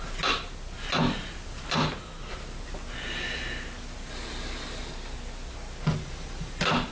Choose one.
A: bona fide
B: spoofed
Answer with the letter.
A